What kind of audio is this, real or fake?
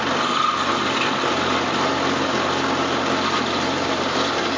real